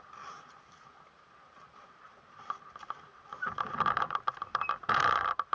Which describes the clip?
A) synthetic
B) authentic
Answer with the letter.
A